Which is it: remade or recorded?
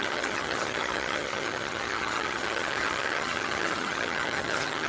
remade